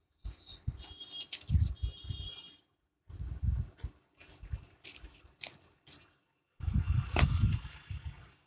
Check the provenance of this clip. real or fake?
real